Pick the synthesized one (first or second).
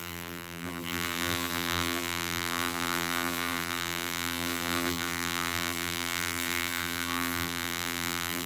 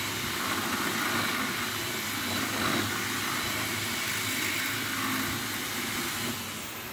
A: first